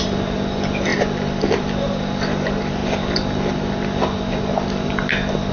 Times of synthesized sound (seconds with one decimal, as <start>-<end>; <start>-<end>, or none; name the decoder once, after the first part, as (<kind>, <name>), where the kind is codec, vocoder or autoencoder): none